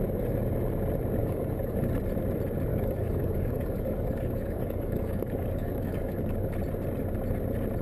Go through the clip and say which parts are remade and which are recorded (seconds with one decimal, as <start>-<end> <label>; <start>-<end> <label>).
0.0-1.2 recorded; 1.2-1.9 remade; 1.9-2.7 recorded; 2.7-6.5 remade; 6.5-7.8 recorded